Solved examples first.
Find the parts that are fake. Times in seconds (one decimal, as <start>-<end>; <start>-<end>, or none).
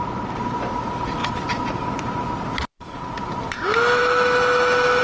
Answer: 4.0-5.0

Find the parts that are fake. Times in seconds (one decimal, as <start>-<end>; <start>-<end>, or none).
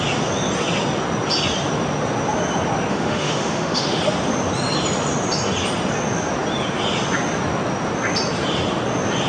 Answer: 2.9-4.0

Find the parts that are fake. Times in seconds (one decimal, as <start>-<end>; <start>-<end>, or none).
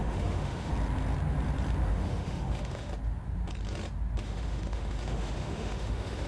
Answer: 0.0-0.7; 1.9-2.9; 4.2-6.3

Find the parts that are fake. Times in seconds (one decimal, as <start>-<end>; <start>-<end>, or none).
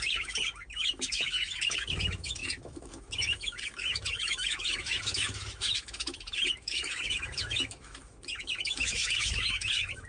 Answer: 0.0-10.1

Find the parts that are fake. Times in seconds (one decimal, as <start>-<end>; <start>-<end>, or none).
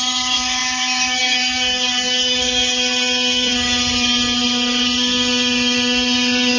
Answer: 0.0-2.6